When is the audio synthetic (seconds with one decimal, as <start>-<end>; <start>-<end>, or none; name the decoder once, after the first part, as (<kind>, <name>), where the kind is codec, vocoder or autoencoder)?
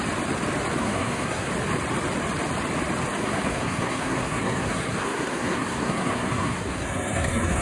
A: 0.8-1.5 (codec, SNAC); 3.2-7.6